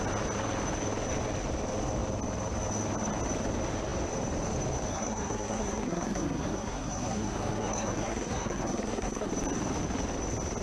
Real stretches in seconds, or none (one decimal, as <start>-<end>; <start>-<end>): 0.0-4.9; 9.3-10.6